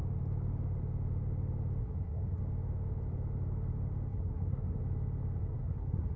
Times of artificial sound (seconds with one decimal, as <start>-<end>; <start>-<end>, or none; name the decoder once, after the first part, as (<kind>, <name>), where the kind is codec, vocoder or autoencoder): 1.8-2.4 (codec, SNAC); 4.1-4.8; 5.4-6.2